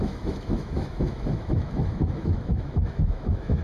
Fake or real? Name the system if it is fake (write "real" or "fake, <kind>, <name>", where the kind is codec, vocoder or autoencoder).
fake, autoencoder, DAC-VAE